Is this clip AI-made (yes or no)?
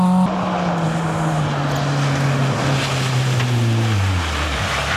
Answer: no